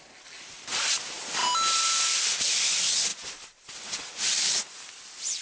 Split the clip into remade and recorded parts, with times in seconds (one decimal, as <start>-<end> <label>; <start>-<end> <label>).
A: 0.0-5.4 recorded